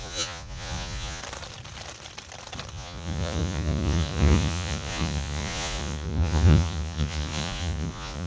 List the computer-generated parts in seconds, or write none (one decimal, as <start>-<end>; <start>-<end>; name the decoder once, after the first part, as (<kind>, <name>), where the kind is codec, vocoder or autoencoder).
0.0-1.2 (vocoder, Vocos); 2.7-8.3